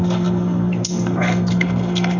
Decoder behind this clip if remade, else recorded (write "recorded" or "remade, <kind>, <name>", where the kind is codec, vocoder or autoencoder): remade, codec, SNAC